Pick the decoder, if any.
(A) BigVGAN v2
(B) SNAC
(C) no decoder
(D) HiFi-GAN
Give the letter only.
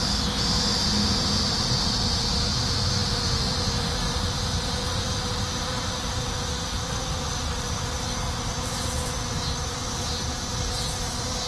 C